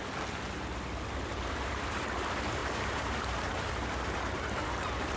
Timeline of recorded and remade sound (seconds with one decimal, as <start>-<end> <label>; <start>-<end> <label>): 0.0-1.3 recorded; 1.3-2.0 remade; 2.0-2.6 recorded; 2.6-3.5 remade; 3.5-5.2 recorded